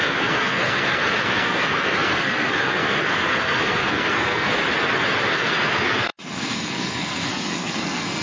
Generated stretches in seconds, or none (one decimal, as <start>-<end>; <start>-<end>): 0.0-4.6; 5.3-8.2